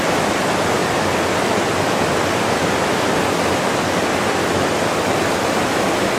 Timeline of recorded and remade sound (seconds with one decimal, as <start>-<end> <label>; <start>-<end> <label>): 0.0-6.2 recorded